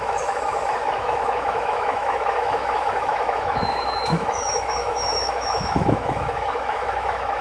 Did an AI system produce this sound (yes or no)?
yes